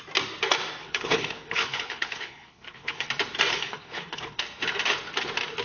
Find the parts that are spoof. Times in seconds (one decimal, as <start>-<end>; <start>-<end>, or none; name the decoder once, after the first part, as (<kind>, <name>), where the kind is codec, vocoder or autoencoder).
0.8-3.1 (codec, HILCodec); 3.5-4.4